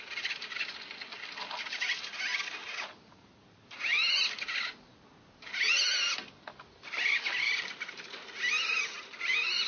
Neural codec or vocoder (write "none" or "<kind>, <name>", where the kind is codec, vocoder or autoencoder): none